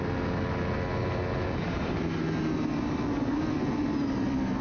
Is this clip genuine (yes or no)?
yes